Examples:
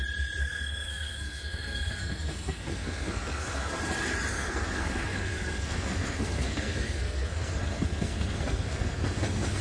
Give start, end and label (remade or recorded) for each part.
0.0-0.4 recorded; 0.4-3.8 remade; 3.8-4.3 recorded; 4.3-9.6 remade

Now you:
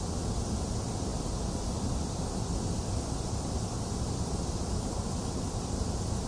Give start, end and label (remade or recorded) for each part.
0.0-6.3 recorded

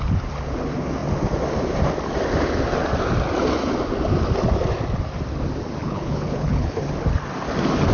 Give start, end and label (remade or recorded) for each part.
0.0-5.8 recorded; 5.8-6.8 remade; 6.8-7.9 recorded

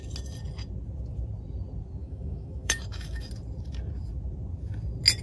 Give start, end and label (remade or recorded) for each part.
0.0-2.0 recorded; 2.0-3.3 remade; 3.3-5.2 recorded

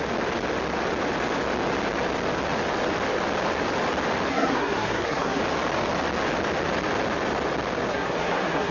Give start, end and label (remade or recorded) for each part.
0.0-4.3 recorded; 4.3-5.4 remade; 5.4-7.9 recorded; 7.9-8.7 remade

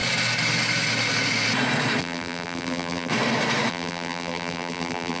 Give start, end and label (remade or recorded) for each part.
0.0-2.0 recorded; 2.0-3.1 remade; 3.1-3.7 recorded; 3.7-5.2 remade

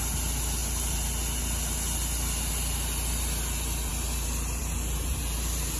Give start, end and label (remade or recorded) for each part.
0.0-5.8 recorded